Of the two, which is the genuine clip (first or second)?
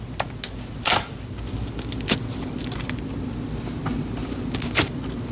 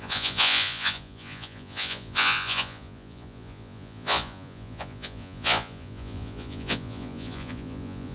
first